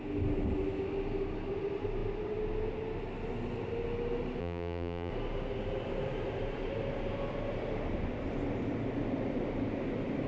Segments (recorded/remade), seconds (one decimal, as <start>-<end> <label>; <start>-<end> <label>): 0.0-4.4 recorded; 4.4-5.1 remade; 5.1-10.3 recorded